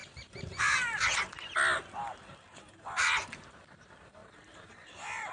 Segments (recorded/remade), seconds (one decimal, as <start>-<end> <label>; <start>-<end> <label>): 0.0-4.2 recorded; 4.2-5.3 remade